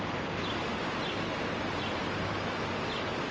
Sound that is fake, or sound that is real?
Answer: real